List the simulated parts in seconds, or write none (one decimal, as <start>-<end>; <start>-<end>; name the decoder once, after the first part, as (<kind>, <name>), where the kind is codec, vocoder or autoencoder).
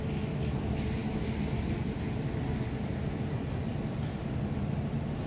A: none